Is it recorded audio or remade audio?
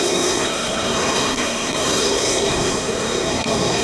remade